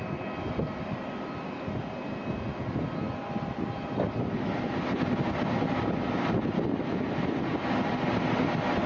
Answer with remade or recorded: recorded